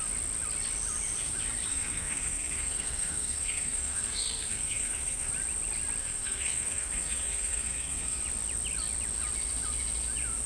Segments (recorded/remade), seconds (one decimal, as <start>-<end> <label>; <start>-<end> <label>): 0.0-1.7 recorded; 1.7-5.3 remade; 5.3-6.0 recorded; 6.0-8.2 remade; 8.2-10.5 recorded